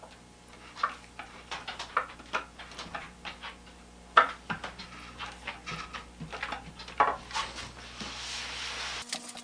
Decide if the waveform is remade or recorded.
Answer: recorded